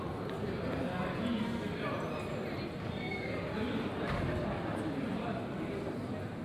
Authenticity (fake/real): real